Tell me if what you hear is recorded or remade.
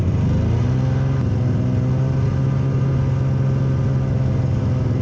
recorded